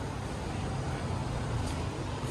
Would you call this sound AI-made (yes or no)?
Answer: no